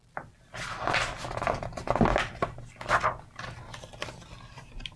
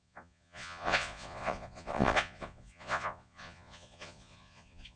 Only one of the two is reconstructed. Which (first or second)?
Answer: second